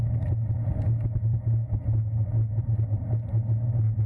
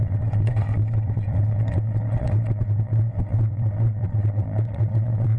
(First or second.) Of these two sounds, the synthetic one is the second